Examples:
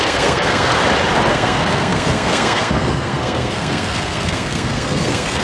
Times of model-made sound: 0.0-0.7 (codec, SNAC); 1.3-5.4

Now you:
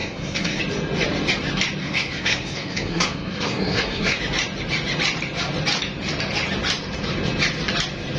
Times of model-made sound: 0.0-0.6 (codec, SNAC); 1.8-4.2

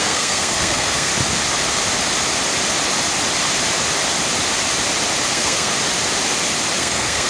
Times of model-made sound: 0.0-1.1 (codec, SNAC); 5.3-5.7; 6.8-7.3